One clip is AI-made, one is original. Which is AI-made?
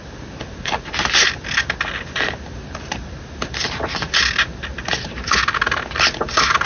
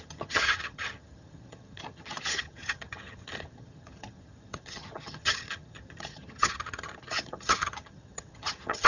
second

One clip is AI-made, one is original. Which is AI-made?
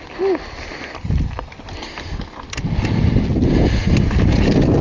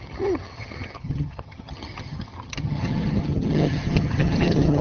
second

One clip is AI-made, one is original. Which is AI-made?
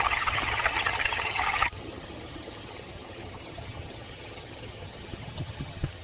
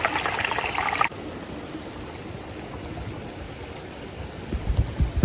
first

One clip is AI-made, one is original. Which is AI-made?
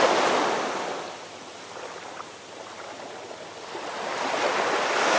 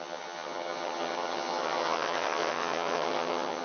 second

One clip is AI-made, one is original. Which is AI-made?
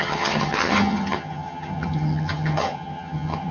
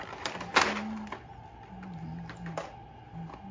first